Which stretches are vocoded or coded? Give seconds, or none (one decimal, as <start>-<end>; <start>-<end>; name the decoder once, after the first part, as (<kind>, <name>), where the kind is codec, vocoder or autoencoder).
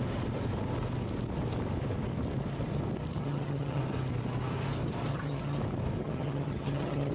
3.1-3.8 (vocoder, HiFi-GAN); 5.1-5.6; 6.0-7.1